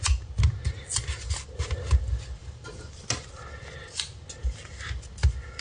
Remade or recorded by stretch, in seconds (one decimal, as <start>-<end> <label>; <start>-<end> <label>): 0.0-2.4 recorded; 2.4-2.9 remade; 2.9-5.6 recorded